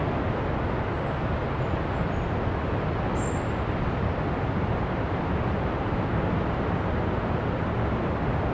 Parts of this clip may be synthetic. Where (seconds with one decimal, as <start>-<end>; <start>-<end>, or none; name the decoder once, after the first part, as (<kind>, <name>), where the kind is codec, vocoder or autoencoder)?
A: none